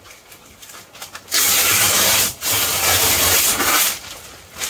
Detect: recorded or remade recorded